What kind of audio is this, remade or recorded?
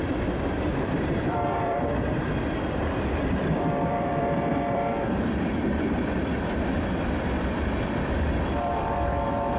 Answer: remade